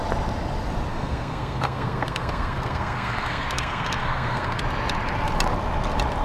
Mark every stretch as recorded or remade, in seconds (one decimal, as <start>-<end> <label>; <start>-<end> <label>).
0.0-0.9 recorded; 0.9-4.6 remade; 4.6-6.2 recorded